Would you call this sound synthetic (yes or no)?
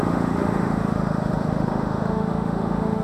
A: yes